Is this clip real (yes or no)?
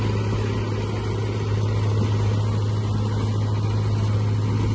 yes